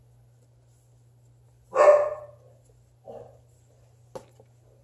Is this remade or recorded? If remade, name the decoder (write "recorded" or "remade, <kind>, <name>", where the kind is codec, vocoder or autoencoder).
recorded